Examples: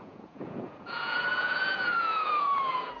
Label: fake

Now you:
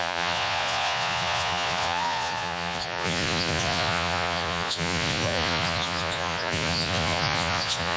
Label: fake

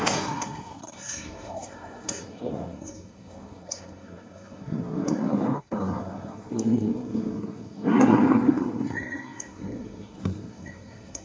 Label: fake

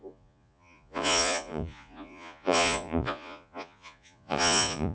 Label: fake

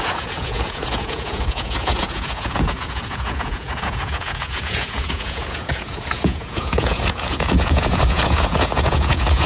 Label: fake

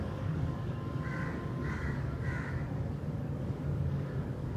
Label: fake